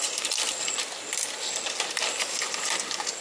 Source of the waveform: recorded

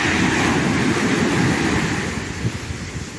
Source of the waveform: recorded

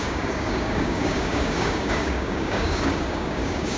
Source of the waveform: remade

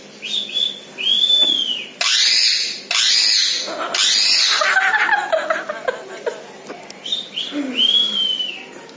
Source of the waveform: recorded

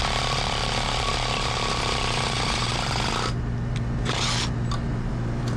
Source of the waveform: recorded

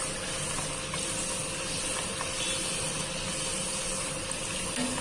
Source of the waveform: recorded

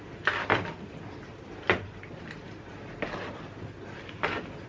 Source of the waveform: recorded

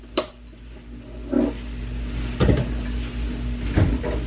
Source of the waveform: recorded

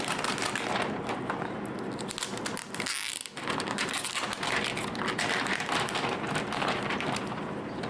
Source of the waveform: recorded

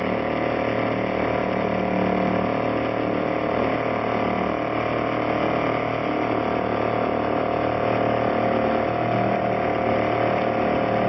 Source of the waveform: recorded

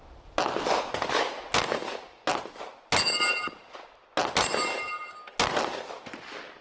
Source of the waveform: recorded